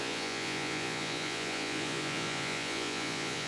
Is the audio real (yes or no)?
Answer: no